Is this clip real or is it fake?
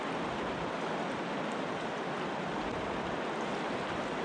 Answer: real